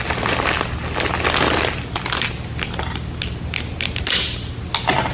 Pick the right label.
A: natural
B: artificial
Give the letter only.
A